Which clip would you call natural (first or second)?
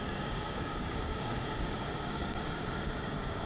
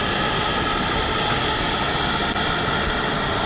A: second